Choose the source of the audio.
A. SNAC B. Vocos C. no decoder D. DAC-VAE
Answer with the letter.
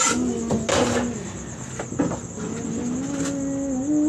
C